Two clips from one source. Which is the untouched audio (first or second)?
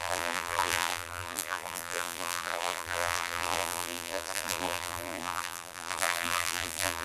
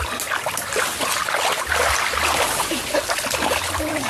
second